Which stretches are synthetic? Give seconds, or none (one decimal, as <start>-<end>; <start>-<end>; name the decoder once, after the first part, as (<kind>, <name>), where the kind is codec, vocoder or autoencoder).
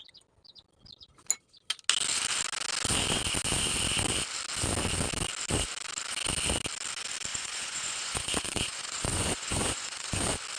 7.3-10.2 (vocoder, Vocos)